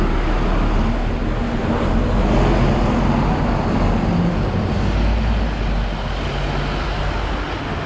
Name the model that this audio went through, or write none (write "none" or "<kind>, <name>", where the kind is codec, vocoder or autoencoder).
none